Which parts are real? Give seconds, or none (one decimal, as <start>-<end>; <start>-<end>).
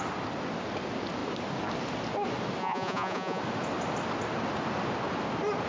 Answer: 0.0-2.6; 3.4-5.7